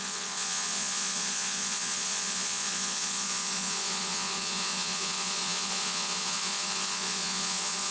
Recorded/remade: remade